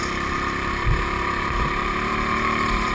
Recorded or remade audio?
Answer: remade